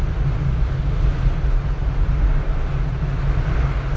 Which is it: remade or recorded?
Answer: recorded